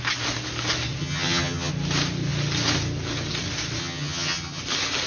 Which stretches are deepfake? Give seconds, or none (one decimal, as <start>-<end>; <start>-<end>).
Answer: 1.0-1.7; 3.8-4.6